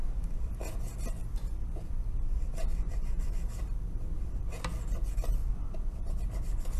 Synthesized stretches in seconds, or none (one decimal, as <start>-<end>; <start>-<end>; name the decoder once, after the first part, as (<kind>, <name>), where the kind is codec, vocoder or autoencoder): none